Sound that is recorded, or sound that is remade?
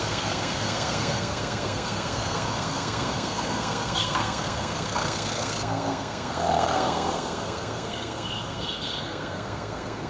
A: remade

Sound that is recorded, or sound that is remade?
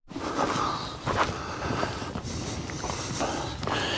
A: recorded